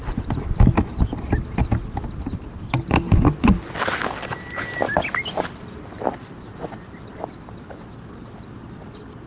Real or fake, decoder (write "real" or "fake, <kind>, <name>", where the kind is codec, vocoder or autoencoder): real